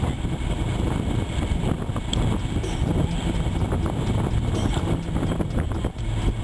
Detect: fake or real real